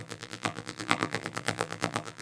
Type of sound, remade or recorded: remade